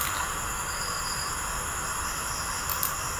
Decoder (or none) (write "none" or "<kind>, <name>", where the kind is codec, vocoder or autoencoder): none